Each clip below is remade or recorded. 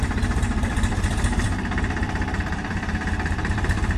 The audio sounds remade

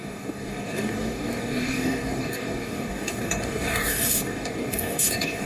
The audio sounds remade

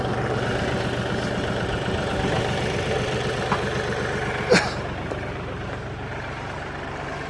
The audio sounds remade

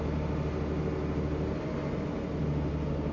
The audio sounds recorded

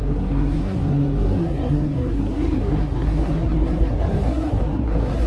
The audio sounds remade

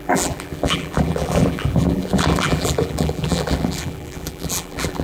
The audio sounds remade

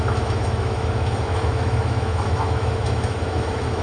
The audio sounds remade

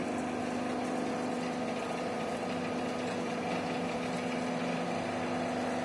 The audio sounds recorded